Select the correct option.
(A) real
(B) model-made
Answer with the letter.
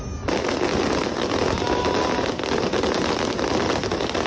A